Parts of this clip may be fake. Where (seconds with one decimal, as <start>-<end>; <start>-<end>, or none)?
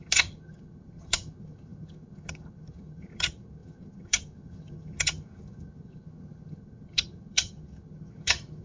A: 0.0-8.6